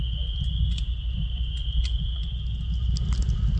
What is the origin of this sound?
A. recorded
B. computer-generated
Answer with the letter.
A